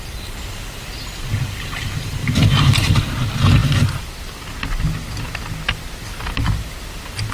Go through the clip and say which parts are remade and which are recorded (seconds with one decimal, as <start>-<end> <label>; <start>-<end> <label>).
0.0-2.2 recorded; 2.2-3.0 remade; 3.0-7.3 recorded

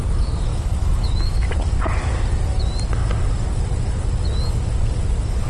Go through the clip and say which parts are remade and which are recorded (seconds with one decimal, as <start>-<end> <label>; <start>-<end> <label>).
0.0-0.5 recorded; 0.5-1.5 remade; 1.5-5.5 recorded

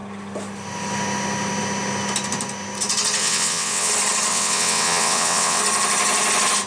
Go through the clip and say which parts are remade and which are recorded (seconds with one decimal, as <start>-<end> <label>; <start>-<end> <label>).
0.0-3.2 recorded; 3.2-3.9 remade; 3.9-4.3 recorded; 4.3-5.6 remade; 5.6-6.7 recorded

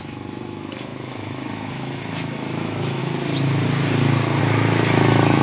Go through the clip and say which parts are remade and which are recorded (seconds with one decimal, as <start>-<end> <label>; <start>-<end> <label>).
0.0-3.0 remade; 3.0-4.4 recorded; 4.4-5.4 remade